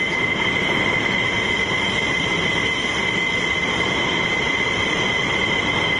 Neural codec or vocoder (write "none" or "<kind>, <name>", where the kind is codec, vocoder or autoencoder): none